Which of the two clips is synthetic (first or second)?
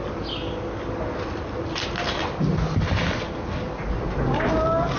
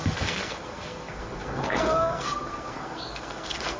second